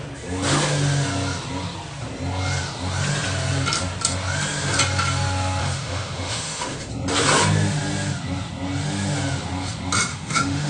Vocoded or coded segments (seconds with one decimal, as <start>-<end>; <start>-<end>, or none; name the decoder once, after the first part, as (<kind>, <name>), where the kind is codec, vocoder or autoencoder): 5.6-6.9 (autoencoder, DAC-VAE); 10.1-10.7

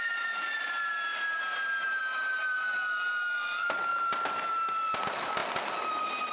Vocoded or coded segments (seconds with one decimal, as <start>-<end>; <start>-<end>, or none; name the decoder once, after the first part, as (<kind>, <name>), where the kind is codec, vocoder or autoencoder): none

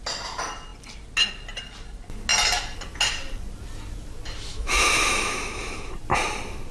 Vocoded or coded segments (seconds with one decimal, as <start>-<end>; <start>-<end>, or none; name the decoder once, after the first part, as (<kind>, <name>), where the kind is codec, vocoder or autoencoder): 4.5-5.9 (autoencoder, DAC-VAE)

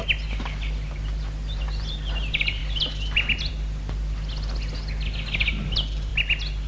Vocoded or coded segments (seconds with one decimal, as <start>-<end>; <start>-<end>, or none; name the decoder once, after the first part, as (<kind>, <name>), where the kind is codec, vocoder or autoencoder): none

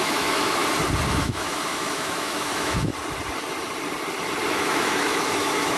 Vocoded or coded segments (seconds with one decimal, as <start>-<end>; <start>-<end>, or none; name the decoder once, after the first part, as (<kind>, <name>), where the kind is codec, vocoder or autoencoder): 0.0-0.6 (autoencoder, DAC-VAE); 1.1-2.9; 4.5-5.8

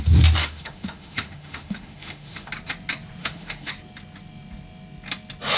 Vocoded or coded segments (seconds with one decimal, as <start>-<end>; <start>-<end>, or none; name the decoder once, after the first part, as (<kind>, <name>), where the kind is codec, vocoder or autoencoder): 0.4-2.5 (autoencoder, DAC-VAE); 3.2-3.7

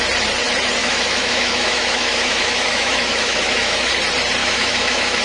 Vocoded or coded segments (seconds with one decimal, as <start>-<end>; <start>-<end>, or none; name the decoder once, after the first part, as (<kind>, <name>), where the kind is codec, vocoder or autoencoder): 0.8-3.9 (autoencoder, DAC-VAE); 4.4-5.2

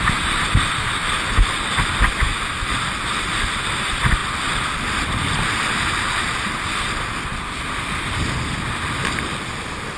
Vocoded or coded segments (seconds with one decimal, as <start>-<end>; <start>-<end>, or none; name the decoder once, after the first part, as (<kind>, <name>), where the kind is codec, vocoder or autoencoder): none